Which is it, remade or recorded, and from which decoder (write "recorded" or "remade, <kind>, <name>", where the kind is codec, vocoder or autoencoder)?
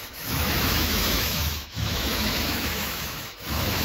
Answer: remade, autoencoder, DAC-VAE